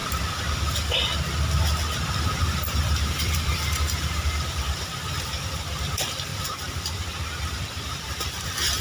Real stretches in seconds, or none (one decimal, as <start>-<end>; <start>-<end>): 0.0-2.1; 6.3-7.7